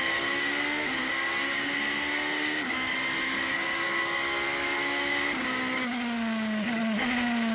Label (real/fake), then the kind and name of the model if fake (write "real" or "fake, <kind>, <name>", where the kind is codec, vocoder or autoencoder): fake, codec, DAC